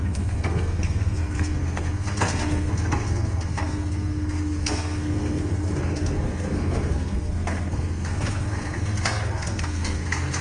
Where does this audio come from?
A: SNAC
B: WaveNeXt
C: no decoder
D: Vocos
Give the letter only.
A